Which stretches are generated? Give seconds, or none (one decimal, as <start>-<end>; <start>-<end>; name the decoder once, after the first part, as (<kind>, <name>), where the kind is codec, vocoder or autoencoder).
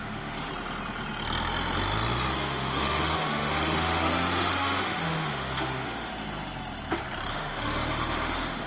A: 0.0-0.5 (autoencoder, DAC-VAE); 2.3-6.1; 7.3-8.7